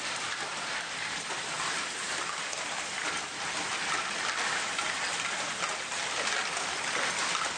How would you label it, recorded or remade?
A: recorded